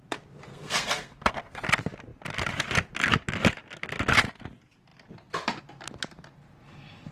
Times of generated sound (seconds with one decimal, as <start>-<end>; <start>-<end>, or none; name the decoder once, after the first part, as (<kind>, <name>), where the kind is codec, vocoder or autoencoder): 0.5-1.6 (codec, SNAC)